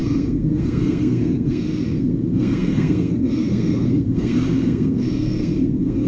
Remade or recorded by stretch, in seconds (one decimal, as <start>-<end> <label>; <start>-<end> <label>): 0.0-6.1 remade